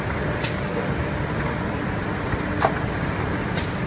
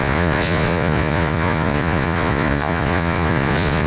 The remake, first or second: second